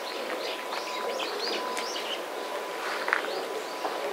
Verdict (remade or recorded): recorded